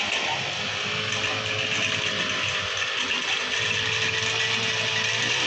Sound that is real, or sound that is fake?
real